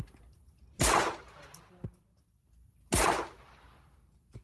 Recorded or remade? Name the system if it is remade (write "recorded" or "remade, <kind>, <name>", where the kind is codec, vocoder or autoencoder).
recorded